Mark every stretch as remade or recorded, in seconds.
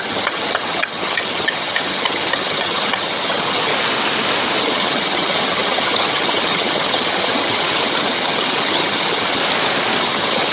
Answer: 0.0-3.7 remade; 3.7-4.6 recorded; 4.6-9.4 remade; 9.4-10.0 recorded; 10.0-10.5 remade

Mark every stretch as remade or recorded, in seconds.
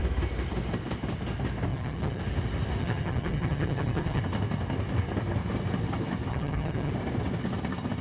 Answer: 0.0-1.7 recorded; 1.7-2.2 remade; 2.2-2.8 recorded; 2.8-4.2 remade; 4.2-6.3 recorded; 6.3-6.9 remade; 6.9-8.0 recorded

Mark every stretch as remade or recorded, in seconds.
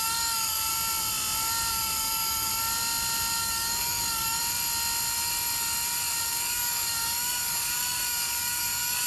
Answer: 0.0-0.7 remade; 0.7-1.7 recorded; 1.7-2.5 remade; 2.5-3.4 recorded; 3.4-4.4 remade; 4.4-6.2 recorded; 6.2-9.1 remade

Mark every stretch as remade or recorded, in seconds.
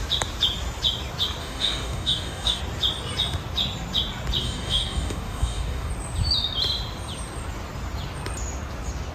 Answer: 0.0-1.4 recorded; 1.4-2.6 remade; 2.6-4.4 recorded; 4.4-5.9 remade; 5.9-9.1 recorded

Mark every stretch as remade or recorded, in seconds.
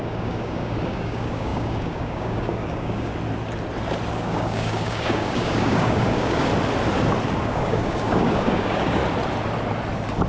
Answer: 0.0-3.1 remade; 3.1-4.1 recorded; 4.1-6.5 remade; 6.5-7.4 recorded; 7.4-9.0 remade; 9.0-10.3 recorded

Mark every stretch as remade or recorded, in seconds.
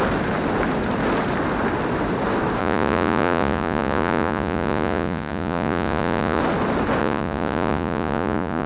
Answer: 0.0-2.6 recorded; 2.6-6.4 remade; 6.4-7.0 recorded; 7.0-8.7 remade